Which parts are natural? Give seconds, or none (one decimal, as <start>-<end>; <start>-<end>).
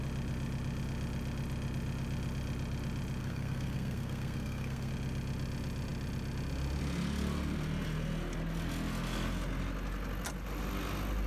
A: 0.0-3.2; 4.9-11.3